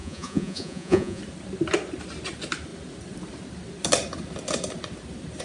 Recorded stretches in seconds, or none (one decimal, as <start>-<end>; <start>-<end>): 1.2-5.4